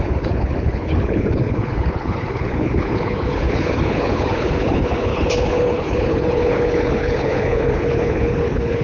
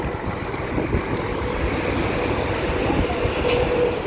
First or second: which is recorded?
second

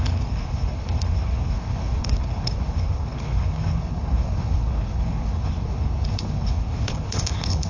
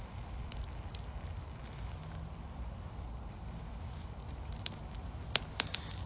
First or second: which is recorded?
second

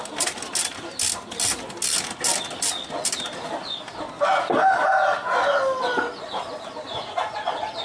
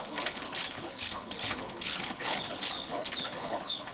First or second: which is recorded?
first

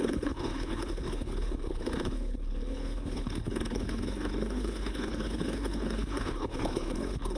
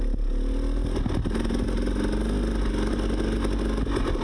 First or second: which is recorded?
second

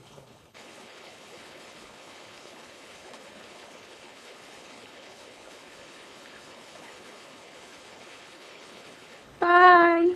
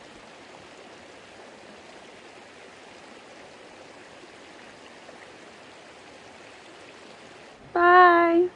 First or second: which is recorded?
second